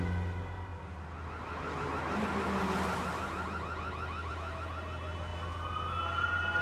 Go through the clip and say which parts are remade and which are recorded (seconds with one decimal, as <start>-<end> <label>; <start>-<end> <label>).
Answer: 0.0-6.6 recorded

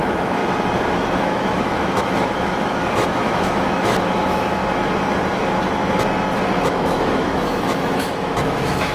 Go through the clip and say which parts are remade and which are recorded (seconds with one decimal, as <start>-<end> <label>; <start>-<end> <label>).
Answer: 0.0-0.4 remade; 0.4-0.9 recorded; 0.9-4.6 remade; 4.6-6.6 recorded; 6.6-8.9 remade

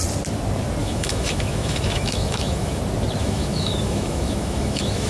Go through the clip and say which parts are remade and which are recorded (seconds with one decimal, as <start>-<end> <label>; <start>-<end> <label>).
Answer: 0.0-0.8 recorded; 0.8-2.8 remade; 2.8-3.2 recorded; 3.2-5.1 remade

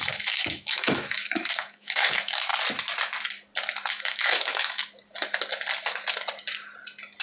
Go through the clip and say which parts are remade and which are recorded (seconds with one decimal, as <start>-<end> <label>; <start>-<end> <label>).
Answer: 0.0-2.5 remade; 2.5-3.9 recorded; 3.9-4.8 remade; 4.8-7.2 recorded

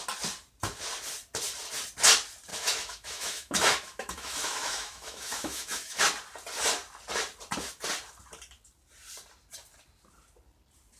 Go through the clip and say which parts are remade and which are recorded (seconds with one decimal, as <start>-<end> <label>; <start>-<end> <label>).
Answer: 0.0-2.5 recorded; 2.5-6.0 remade; 6.0-11.0 recorded

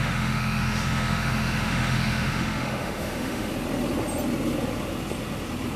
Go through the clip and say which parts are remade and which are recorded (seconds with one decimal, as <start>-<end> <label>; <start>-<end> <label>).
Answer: 0.0-3.5 remade; 3.5-5.8 recorded

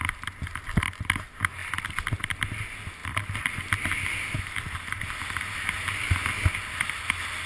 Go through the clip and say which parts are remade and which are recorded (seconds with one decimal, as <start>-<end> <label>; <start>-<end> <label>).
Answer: 0.0-7.5 recorded

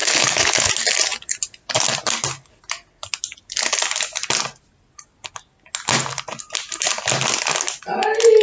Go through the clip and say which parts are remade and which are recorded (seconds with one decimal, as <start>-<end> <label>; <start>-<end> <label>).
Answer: 0.0-0.7 remade; 0.7-8.4 recorded